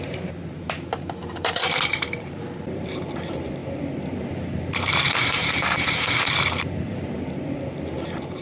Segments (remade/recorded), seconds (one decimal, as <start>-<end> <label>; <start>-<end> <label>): 0.0-8.4 remade